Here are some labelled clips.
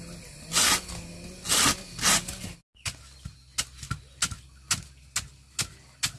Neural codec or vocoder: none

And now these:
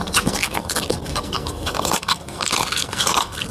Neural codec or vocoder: codec, SNAC